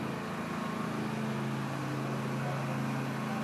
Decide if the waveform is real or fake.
real